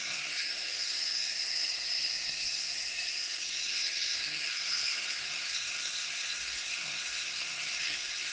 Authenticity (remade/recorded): remade